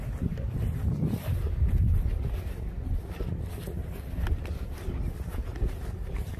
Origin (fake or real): real